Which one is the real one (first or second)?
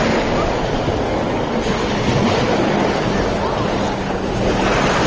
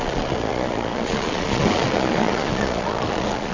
first